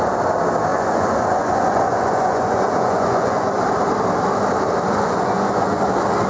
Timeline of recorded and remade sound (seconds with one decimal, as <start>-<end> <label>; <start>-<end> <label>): 0.0-0.7 recorded; 0.7-3.6 remade; 3.6-4.9 recorded; 4.9-5.8 remade; 5.8-6.3 recorded